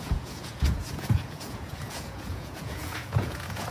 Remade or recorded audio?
remade